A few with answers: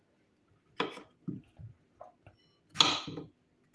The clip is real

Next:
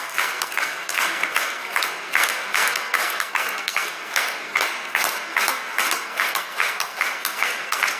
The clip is fake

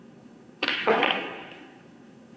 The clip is fake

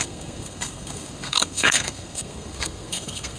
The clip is fake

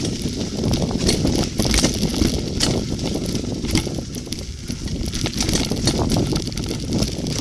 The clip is real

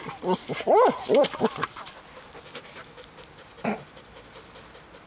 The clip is real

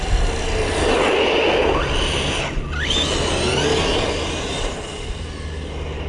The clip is real